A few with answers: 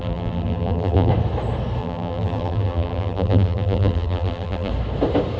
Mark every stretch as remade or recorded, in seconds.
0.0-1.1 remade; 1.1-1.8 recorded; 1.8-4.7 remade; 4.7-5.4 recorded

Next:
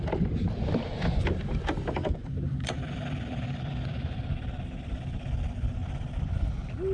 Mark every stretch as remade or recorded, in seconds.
0.0-2.2 recorded; 2.2-3.7 remade; 3.7-5.8 recorded; 5.8-6.4 remade; 6.4-6.9 recorded

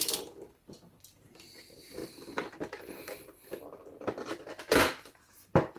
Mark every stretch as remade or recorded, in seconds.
0.0-5.8 remade